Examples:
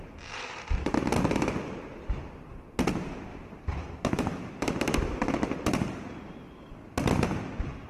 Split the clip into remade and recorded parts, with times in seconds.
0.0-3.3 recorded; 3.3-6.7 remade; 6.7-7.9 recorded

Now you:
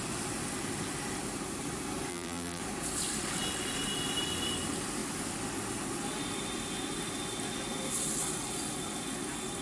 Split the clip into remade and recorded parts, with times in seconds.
0.0-2.1 recorded; 2.1-2.6 remade; 2.6-9.6 recorded

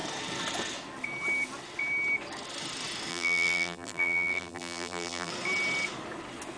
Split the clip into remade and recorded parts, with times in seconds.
0.0-3.1 recorded; 3.1-5.3 remade; 5.3-6.6 recorded

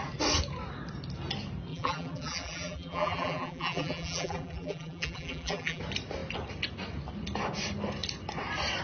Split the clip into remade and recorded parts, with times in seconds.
0.0-1.7 recorded; 1.7-5.8 remade; 5.8-8.8 recorded